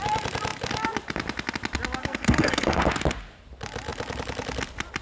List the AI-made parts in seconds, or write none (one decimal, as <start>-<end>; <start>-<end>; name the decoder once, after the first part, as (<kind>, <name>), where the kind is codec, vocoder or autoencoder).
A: 2.0-2.8 (codec, SNAC)